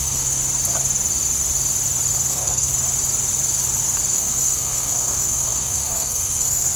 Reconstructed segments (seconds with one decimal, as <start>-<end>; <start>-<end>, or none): 0.0-0.4; 2.3-2.7; 4.1-6.8